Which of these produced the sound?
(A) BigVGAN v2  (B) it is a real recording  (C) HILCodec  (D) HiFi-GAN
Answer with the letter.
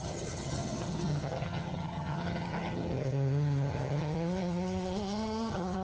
D